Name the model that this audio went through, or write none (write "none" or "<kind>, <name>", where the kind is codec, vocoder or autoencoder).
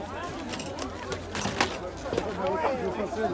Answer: none